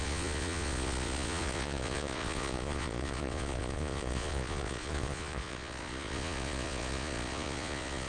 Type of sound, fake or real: fake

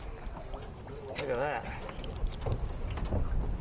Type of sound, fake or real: real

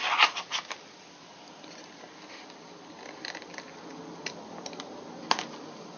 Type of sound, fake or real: real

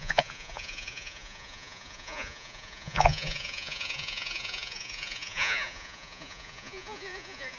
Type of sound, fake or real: fake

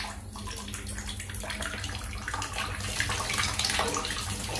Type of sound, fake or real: real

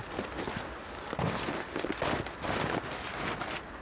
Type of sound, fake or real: real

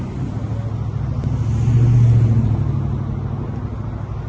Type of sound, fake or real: real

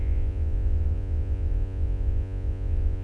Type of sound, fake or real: fake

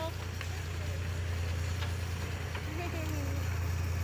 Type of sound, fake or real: real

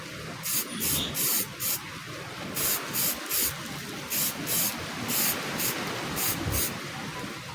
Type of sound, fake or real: real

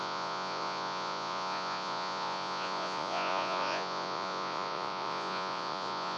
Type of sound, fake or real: fake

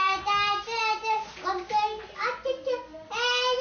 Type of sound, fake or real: real